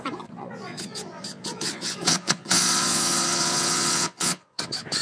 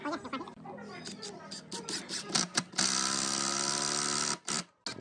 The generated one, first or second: first